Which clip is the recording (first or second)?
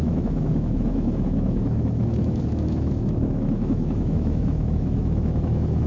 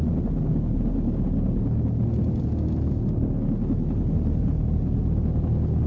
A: second